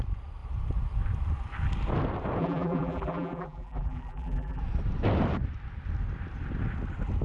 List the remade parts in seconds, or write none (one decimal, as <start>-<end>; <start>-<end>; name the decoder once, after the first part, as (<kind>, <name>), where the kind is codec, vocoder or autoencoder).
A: 2.4-4.6 (vocoder, BigVGAN v2)